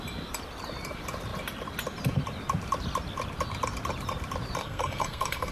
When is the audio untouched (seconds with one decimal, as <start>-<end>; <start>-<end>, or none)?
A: 0.0-4.6